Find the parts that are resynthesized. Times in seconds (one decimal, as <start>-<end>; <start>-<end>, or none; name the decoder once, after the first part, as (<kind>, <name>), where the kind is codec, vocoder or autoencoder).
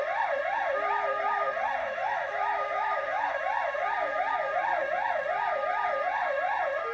1.8-3.4 (autoencoder, DAC-VAE)